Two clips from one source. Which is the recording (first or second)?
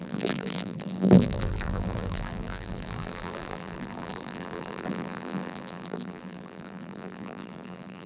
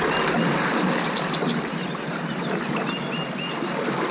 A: second